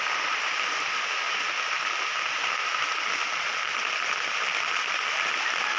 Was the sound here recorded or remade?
remade